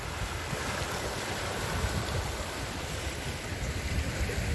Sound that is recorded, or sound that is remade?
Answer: remade